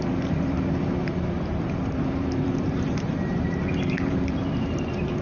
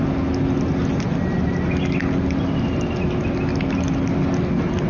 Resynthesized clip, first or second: first